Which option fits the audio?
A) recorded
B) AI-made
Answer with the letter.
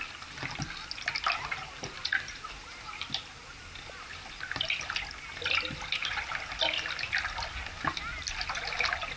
A